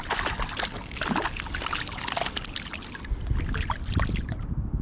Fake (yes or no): no